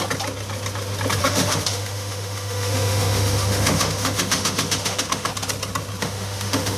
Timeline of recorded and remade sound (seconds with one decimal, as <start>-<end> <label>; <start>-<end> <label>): 0.0-1.2 recorded; 1.2-5.3 remade; 5.3-6.0 recorded; 6.0-6.8 remade